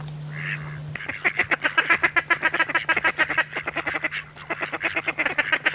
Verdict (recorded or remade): recorded